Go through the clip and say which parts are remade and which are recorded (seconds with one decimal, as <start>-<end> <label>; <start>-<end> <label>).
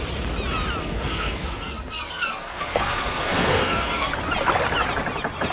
0.0-0.8 recorded; 0.8-4.1 remade; 4.1-5.5 recorded